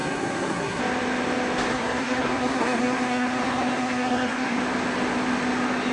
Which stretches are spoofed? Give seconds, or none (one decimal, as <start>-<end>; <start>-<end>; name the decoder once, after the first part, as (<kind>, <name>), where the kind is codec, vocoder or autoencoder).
0.0-0.8 (codec, SNAC); 1.7-4.6